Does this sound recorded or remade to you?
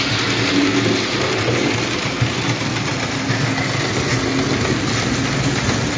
recorded